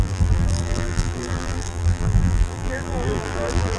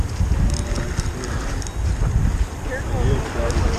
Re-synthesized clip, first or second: first